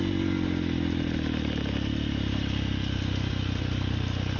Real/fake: real